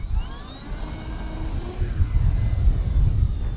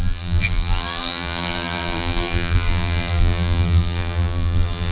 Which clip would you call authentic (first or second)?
first